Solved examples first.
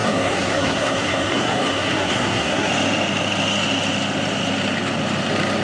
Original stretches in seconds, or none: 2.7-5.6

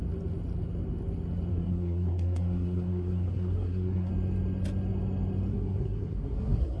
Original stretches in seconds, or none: 0.0-1.5; 4.1-5.5

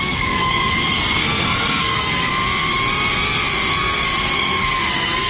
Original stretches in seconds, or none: 2.3-3.7

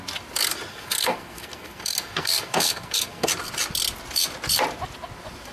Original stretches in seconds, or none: 0.0-0.7; 3.3-5.5